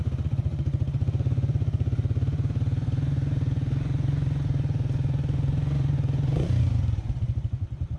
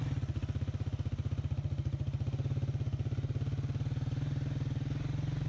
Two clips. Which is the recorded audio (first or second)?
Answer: second